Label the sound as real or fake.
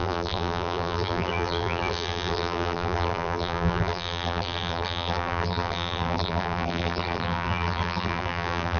fake